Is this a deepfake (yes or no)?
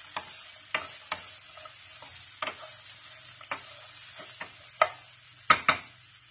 no